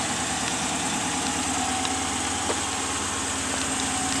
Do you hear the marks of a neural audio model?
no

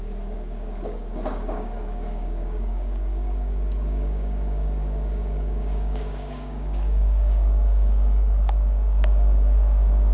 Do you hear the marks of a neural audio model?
yes